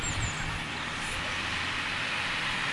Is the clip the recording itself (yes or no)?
yes